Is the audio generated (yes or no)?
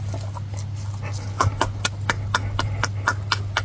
no